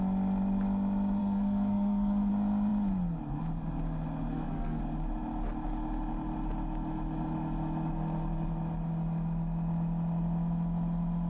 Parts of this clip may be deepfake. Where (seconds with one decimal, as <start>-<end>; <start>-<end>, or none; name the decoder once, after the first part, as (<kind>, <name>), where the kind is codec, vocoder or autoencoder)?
1.2-2.3 (codec, SNAC); 4.3-4.8